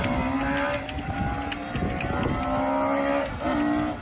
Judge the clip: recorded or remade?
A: recorded